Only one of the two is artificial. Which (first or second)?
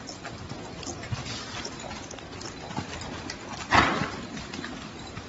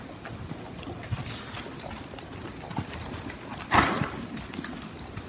second